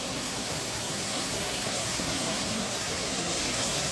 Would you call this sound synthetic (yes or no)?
yes